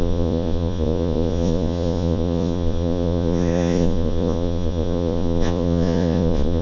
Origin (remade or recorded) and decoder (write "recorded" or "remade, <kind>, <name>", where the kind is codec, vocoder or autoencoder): remade, vocoder, Vocos